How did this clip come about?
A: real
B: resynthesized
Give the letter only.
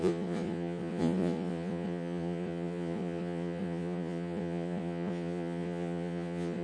B